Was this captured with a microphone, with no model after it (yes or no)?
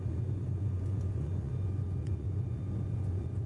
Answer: no